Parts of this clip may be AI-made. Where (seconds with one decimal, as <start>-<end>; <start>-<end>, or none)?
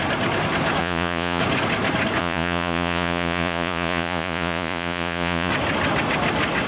0.8-1.4; 2.2-5.5